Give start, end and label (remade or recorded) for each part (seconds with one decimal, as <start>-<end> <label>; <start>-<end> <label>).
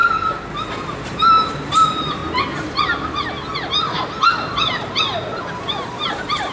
0.0-2.2 remade; 2.2-6.1 recorded; 6.1-6.5 remade